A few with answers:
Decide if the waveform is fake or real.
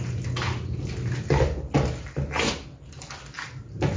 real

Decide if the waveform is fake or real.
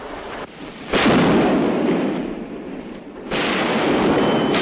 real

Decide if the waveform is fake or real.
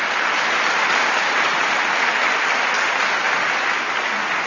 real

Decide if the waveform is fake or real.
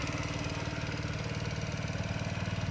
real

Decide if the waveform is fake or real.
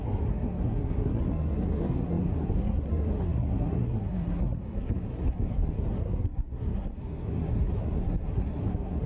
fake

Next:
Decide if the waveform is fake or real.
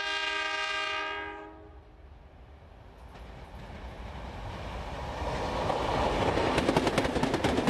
real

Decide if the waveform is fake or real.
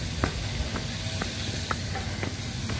real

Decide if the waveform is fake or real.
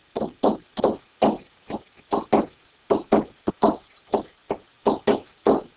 real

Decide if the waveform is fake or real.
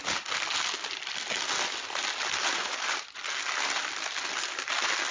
real